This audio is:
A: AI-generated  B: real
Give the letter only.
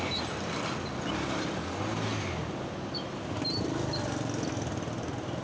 B